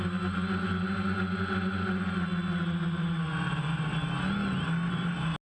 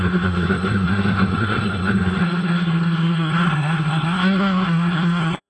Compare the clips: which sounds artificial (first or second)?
second